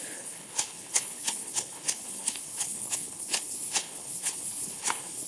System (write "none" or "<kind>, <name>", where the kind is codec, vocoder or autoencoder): codec, HILCodec